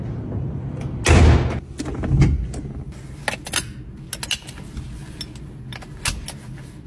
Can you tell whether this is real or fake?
real